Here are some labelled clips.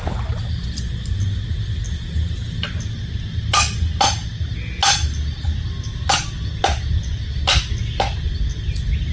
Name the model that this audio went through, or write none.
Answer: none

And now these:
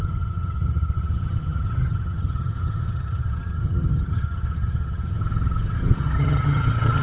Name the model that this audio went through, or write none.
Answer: vocoder, HiFi-GAN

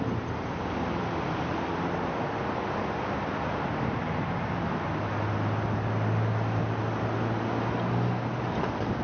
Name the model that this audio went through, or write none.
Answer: none